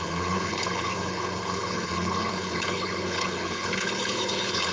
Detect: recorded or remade remade